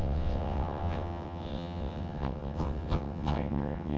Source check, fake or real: fake